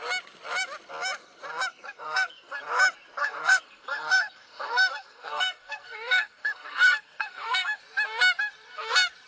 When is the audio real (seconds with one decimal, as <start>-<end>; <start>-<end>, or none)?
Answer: 0.0-1.7; 2.6-3.2; 7.8-9.3

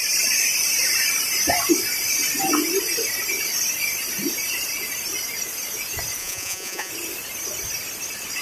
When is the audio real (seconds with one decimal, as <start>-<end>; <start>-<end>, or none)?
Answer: 0.0-6.2; 6.9-8.4